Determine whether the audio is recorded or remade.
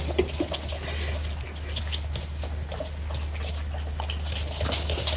recorded